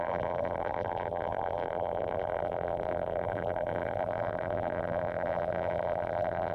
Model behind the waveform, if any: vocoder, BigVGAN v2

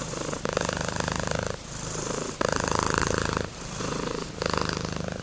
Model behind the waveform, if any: vocoder, BigVGAN v2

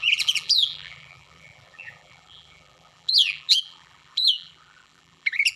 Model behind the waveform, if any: vocoder, BigVGAN v2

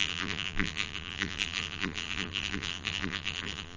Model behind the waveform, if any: vocoder, BigVGAN v2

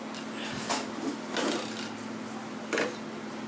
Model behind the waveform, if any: none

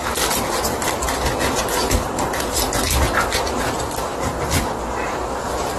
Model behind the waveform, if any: none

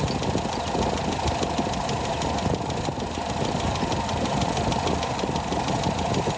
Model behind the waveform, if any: none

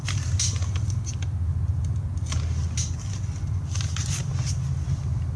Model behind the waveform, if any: none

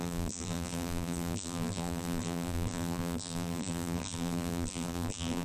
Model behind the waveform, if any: vocoder, BigVGAN v2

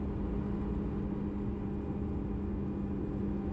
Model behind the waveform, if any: none